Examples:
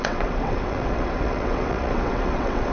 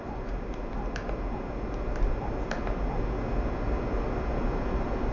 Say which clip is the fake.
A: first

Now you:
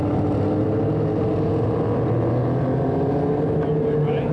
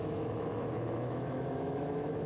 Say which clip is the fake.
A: second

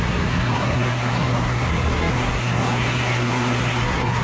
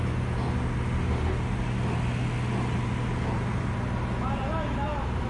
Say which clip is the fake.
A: first